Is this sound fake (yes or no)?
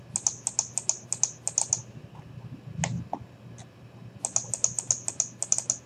no